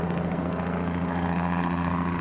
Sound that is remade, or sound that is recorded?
remade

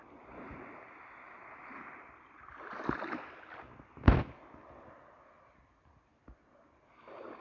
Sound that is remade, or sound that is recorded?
recorded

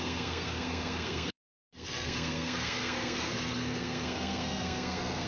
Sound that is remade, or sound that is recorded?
remade